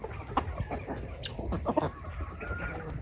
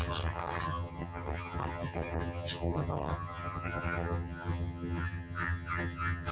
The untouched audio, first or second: first